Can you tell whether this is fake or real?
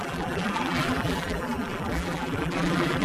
fake